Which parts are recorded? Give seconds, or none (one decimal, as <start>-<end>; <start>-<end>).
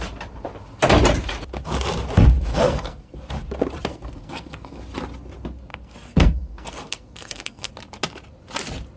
0.0-2.5; 3.3-3.9; 4.8-5.7; 7.7-9.0